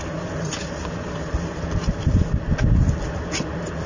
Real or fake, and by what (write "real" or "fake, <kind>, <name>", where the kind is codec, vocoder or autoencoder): real